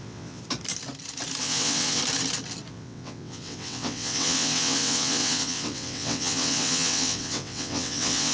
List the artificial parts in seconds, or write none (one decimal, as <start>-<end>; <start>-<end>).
0.0-0.4; 1.4-2.0; 2.7-8.3